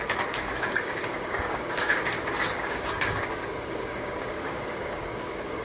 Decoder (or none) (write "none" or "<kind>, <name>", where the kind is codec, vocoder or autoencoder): codec, DAC